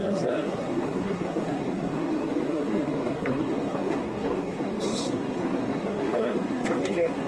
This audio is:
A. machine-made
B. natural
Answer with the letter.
A